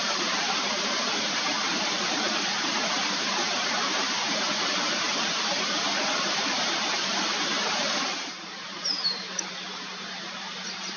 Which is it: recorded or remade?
remade